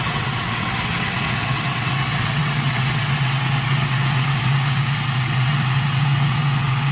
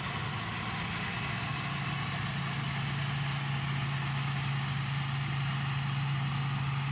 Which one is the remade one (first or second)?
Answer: first